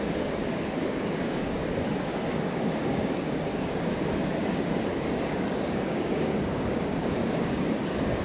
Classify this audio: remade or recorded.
remade